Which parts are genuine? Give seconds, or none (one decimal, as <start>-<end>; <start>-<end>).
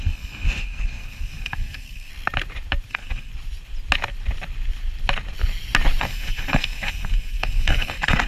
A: 2.1-2.9; 3.3-6.0